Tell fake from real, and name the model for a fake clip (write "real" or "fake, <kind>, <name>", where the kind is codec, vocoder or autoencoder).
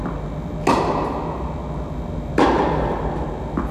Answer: real